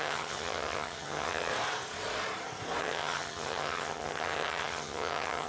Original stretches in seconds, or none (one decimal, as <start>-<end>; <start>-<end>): 1.5-2.8